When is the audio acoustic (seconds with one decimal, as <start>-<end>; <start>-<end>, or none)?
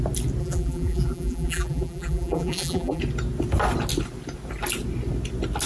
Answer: 0.0-0.4; 3.0-5.7